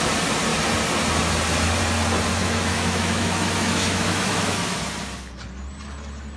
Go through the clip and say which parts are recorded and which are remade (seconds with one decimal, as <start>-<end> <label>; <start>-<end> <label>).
0.0-2.4 recorded; 2.4-4.8 remade; 4.8-6.4 recorded